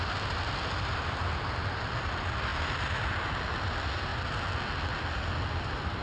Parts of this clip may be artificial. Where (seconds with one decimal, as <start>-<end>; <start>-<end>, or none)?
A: none